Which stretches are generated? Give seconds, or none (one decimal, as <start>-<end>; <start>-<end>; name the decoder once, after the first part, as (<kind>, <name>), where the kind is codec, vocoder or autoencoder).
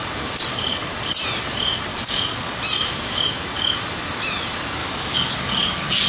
1.9-2.6 (codec, DAC); 4.8-6.1